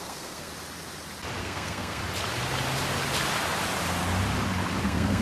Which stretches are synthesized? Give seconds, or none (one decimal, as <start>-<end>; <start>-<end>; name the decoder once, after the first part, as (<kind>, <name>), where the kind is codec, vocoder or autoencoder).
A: 0.0-0.5 (codec, SNAC); 1.4-2.0; 4.8-5.2